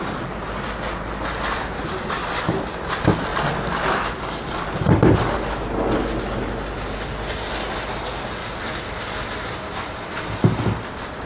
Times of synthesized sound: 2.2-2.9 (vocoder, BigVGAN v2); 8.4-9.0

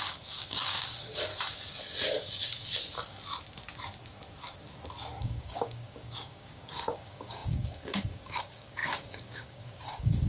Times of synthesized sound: 0.0-1.3 (codec, DAC); 5.2-10.3